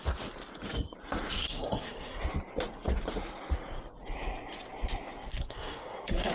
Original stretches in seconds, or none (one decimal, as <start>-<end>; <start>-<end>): 0.0-1.4; 2.2-5.3